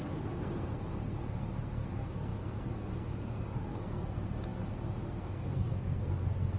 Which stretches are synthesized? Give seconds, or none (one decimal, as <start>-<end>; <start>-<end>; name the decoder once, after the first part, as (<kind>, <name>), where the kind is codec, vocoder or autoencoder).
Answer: 0.0-6.6 (codec, SNAC)